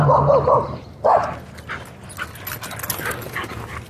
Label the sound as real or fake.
real